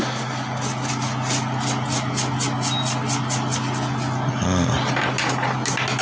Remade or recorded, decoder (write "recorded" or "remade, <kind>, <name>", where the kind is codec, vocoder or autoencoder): recorded